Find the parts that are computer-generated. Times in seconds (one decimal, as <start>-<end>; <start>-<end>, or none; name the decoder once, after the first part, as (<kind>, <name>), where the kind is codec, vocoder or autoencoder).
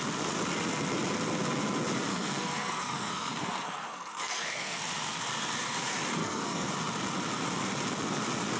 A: 2.1-4.8 (codec, SNAC); 6.2-6.7